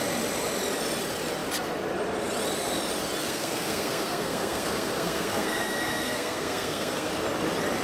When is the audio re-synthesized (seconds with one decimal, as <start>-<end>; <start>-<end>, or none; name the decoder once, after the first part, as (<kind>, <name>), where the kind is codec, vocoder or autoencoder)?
3.2-7.1 (codec, SNAC)